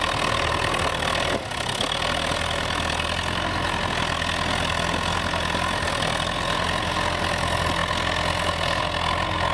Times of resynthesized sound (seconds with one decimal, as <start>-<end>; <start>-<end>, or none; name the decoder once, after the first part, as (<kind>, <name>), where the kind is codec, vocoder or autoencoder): none